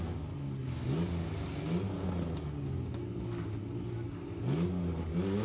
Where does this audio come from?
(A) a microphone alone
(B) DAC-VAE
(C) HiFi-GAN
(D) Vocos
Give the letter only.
A